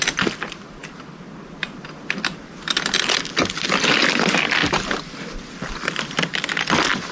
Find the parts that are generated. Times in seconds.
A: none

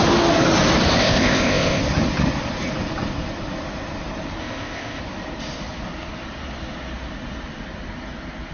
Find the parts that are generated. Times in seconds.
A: 1.0-1.8 (codec, ZipCodec); 4.4-5.0

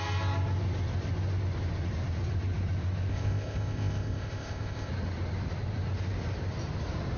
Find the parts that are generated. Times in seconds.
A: 3.1-4.9 (codec, ZipCodec)

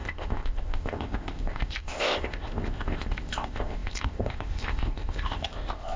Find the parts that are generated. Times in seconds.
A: 0.0-6.0 (codec, ZipCodec)